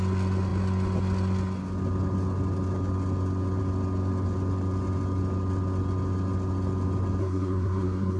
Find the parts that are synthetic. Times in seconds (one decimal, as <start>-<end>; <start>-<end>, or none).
7.2-8.2